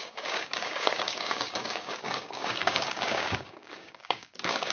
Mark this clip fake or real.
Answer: fake